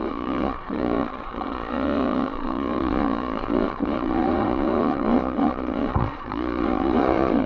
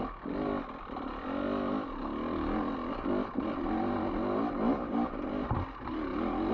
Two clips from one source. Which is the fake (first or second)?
first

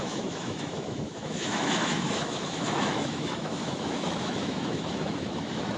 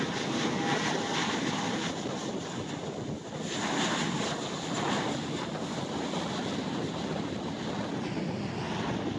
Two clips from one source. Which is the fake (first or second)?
first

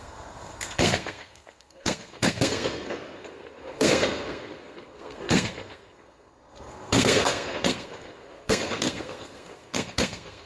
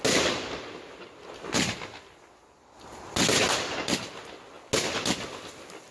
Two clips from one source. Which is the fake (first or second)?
first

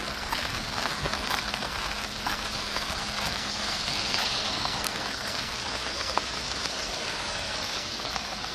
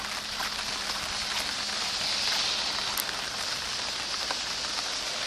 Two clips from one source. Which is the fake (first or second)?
first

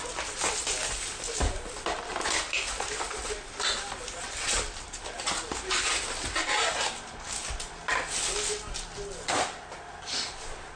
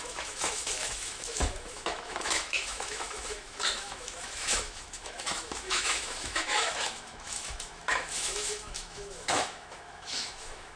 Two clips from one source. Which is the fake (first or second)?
second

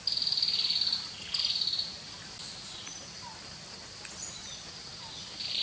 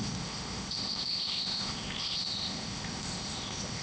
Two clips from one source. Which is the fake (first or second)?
second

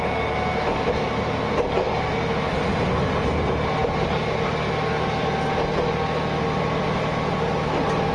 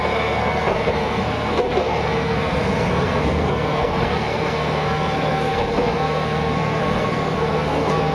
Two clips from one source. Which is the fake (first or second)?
second